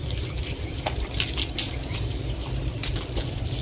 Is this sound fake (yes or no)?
no